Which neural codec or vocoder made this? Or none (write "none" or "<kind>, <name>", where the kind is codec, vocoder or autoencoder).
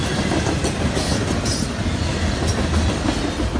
none